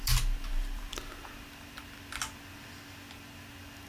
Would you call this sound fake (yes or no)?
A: no